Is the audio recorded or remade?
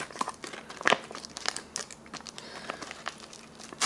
recorded